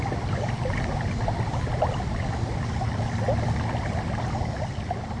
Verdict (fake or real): real